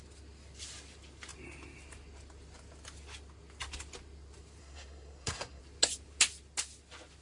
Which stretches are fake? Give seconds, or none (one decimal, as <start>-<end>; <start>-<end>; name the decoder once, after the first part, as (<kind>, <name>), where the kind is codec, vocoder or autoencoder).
4.6-5.6 (codec, SNAC)